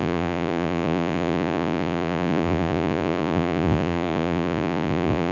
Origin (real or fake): fake